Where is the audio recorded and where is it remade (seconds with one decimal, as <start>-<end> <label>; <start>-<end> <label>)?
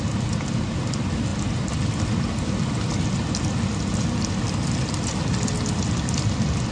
0.0-6.7 recorded